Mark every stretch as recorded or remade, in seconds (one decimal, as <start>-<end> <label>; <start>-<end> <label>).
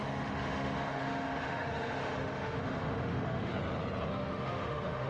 0.0-3.5 remade; 3.5-4.1 recorded; 4.1-5.1 remade